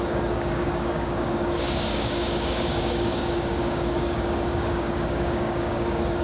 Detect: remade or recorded remade